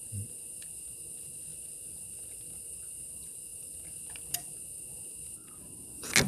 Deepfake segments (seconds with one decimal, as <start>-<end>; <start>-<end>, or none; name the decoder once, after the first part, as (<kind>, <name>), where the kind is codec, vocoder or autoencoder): none

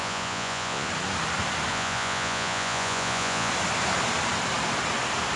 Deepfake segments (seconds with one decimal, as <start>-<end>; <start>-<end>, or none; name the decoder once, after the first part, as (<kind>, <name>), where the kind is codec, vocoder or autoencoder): 0.0-0.9 (vocoder, Vocos); 1.7-3.5

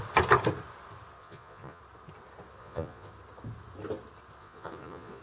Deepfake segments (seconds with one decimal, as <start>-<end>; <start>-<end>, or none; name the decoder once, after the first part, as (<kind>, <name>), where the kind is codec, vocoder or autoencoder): 1.2-1.8 (vocoder, Vocos); 2.6-3.1; 4.4-5.2

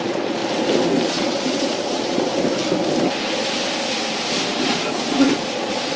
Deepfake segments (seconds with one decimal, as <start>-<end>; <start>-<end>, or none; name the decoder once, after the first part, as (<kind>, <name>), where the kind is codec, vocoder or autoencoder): 0.0-0.4 (vocoder, Vocos); 1.1-2.3; 4.6-6.0